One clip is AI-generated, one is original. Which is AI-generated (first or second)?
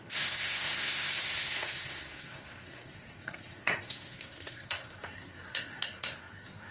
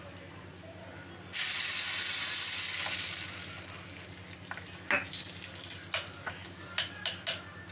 first